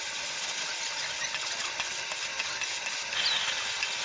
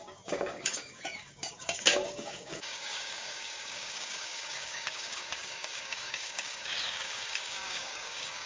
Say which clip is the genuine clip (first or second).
first